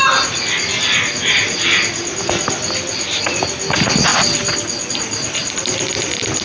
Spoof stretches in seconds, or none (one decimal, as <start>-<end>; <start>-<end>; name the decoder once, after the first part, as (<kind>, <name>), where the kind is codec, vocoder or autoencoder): none